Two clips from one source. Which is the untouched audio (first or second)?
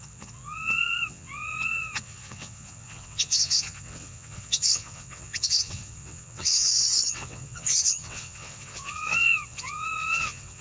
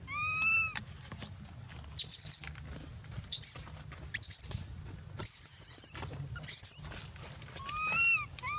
second